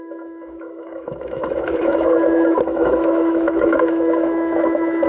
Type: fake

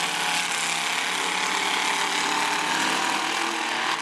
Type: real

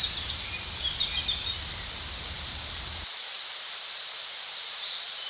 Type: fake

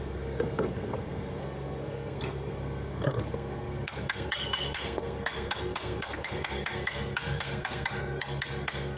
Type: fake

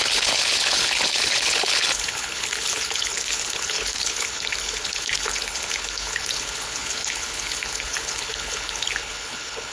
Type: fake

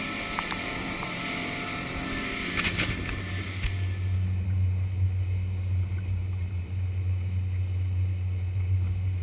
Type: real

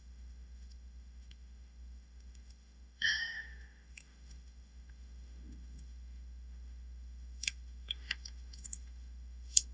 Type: fake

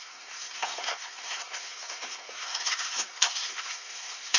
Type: fake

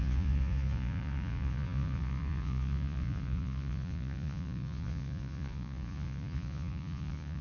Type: fake